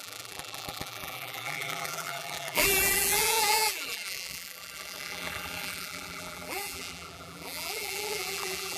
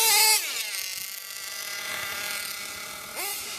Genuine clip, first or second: second